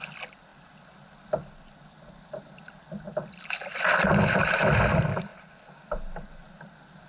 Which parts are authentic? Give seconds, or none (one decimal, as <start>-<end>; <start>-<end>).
0.0-7.1